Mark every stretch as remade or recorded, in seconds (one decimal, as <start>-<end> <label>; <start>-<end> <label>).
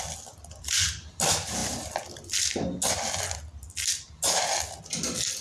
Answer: 0.0-5.4 recorded